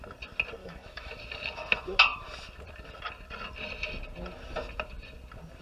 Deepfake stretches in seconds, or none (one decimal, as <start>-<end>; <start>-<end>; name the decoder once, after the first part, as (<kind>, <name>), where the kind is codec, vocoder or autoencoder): 0.6-1.2 (autoencoder, DAC-VAE)